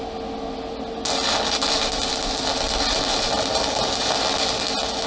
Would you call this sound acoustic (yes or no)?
yes